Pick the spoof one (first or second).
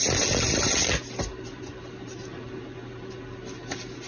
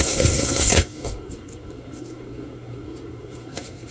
second